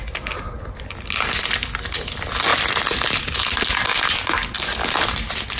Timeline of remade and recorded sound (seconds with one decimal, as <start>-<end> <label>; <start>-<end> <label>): 0.0-5.6 recorded